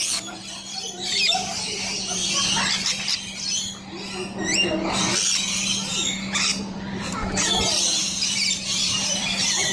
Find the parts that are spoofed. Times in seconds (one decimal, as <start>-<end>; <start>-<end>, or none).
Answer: 0.0-2.2; 6.6-9.7